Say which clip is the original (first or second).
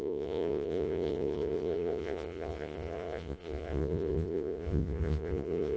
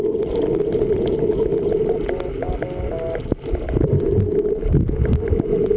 second